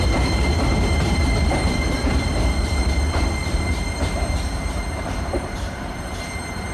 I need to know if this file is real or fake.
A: fake